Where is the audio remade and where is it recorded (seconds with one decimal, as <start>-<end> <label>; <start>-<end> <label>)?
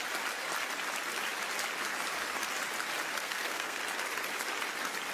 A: 0.0-3.2 recorded; 3.2-3.8 remade; 3.8-5.1 recorded